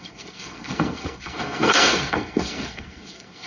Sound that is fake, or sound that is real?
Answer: fake